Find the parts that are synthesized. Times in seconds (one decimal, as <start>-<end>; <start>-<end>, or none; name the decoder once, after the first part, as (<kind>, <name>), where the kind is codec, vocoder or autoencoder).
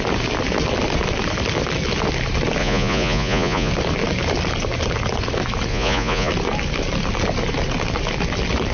2.6-3.7 (vocoder, Vocos); 5.7-6.3